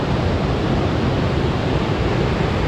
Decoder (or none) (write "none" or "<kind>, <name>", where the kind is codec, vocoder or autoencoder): none